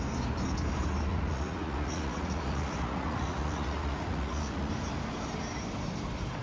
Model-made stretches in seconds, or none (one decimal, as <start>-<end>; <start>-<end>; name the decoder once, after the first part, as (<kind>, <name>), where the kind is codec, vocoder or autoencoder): 1.1-4.7 (vocoder, Vocos)

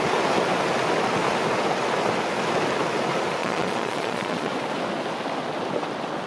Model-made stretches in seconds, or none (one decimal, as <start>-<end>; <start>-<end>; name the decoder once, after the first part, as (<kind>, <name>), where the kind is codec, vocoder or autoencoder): 3.4-4.5 (vocoder, Vocos)

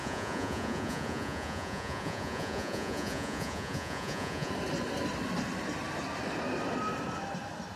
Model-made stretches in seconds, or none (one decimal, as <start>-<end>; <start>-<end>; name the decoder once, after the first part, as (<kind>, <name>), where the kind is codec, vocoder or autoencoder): 0.0-4.5 (vocoder, Vocos)

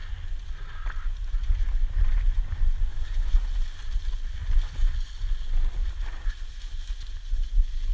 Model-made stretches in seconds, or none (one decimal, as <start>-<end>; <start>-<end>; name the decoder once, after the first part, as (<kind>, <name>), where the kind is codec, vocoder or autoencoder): 2.9-3.4 (vocoder, Vocos)

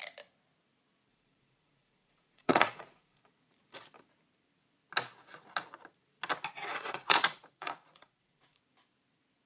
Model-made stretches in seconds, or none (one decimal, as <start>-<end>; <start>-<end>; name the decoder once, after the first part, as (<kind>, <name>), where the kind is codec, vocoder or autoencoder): 1.1-3.2 (vocoder, Vocos); 6.7-8.6

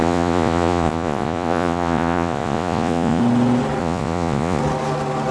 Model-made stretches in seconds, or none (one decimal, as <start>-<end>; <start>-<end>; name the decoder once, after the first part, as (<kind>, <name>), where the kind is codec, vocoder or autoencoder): 0.0-3.2 (vocoder, Vocos); 3.8-4.6